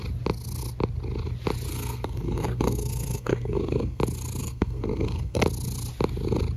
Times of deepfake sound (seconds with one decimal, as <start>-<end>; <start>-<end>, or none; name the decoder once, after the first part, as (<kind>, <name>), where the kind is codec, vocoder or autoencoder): 1.7-4.0 (codec, SNAC); 4.4-5.4